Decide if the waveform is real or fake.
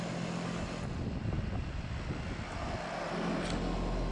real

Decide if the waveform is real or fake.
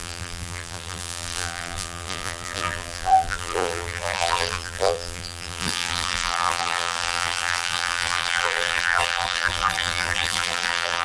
fake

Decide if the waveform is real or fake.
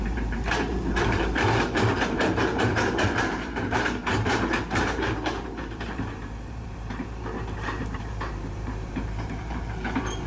fake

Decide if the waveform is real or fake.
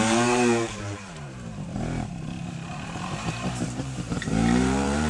fake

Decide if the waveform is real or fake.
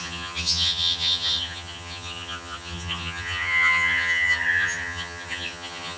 fake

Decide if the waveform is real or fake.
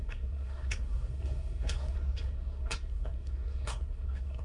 fake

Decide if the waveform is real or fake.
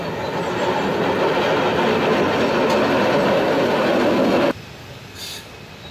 real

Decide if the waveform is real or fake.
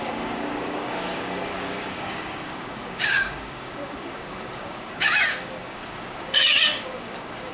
fake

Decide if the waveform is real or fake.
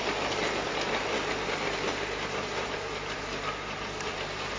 real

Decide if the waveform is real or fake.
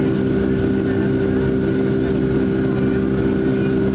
real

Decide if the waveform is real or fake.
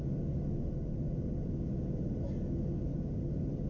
real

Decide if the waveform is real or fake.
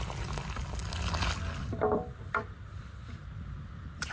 real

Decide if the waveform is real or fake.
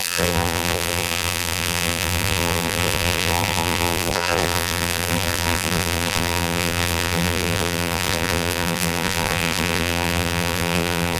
fake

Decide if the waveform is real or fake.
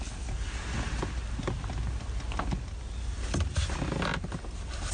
real